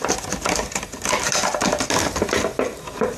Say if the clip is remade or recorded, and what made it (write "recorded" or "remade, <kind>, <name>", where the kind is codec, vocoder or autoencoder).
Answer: recorded